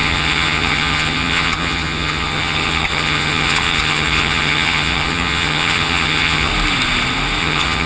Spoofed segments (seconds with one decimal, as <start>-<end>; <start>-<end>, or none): 0.0-6.5; 7.4-7.9